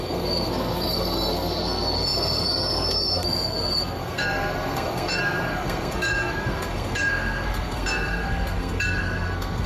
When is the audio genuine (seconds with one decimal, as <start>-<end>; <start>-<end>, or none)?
none